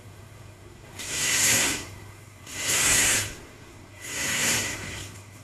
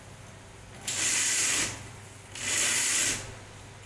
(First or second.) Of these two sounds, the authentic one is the second